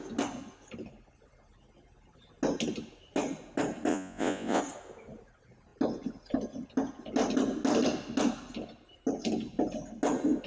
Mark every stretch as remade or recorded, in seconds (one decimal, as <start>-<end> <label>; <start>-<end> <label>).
0.0-3.9 recorded; 3.9-4.6 remade; 4.6-10.5 recorded